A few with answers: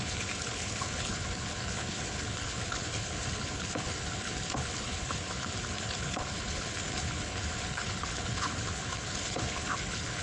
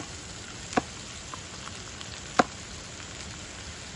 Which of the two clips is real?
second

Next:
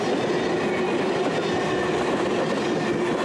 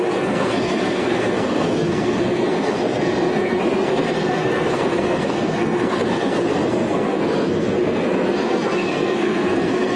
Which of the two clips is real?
first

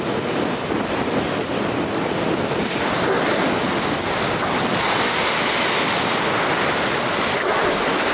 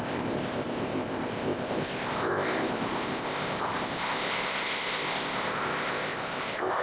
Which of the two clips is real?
first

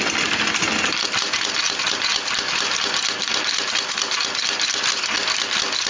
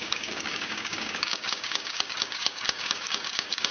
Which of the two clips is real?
first